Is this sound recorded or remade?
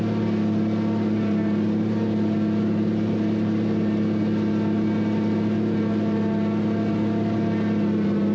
recorded